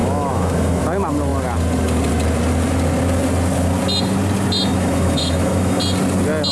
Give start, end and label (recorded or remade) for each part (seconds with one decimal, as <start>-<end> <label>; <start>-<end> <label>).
0.0-0.8 remade; 0.8-4.7 recorded; 4.7-5.8 remade; 5.8-6.5 recorded

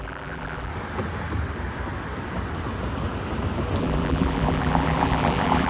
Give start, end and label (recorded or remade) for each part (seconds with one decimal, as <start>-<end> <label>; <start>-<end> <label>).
0.0-0.7 remade; 0.7-3.8 recorded; 3.8-5.7 remade

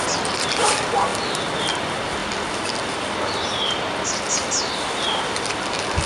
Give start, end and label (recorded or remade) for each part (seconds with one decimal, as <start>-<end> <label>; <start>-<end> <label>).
0.0-6.1 recorded

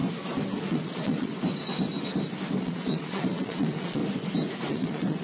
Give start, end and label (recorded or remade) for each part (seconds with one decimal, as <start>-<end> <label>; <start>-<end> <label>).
0.0-0.7 recorded; 0.7-1.3 remade; 1.3-2.6 recorded; 2.6-4.0 remade; 4.0-4.7 recorded; 4.7-5.2 remade

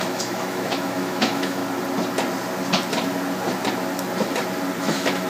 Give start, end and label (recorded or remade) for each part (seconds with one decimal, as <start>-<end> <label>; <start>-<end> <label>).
0.0-1.6 remade; 1.6-4.8 recorded; 4.8-5.3 remade

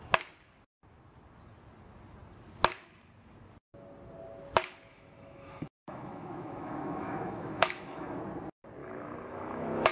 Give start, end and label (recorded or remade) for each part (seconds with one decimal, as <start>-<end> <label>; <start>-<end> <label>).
0.0-4.9 recorded; 4.9-8.2 remade; 8.2-8.8 recorded; 8.8-9.9 remade